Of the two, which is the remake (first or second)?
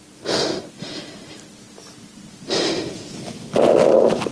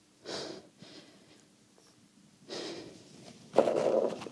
second